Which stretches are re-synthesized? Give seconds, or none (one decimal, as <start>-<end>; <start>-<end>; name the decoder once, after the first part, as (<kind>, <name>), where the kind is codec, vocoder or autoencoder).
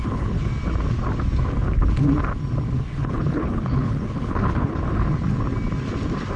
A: 0.0-0.5 (codec, HILCodec); 2.8-5.1